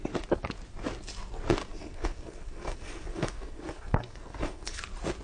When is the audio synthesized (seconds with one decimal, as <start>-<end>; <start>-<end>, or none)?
1.7-4.8

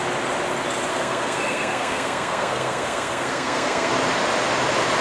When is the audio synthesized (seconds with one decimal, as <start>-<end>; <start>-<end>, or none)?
0.9-3.9

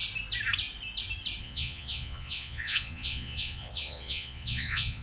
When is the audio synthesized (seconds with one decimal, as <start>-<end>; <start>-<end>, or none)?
1.4-5.0

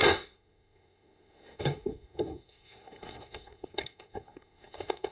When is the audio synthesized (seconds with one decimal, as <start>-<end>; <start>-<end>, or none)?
0.0-5.1

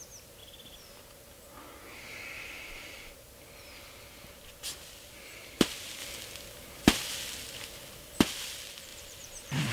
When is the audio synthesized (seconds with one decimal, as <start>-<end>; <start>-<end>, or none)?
8.9-9.7

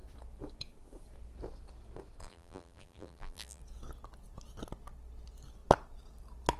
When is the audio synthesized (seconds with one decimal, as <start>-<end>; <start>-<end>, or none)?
2.2-3.6

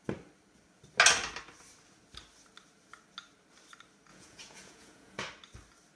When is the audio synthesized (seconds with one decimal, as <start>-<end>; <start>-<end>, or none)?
4.1-5.2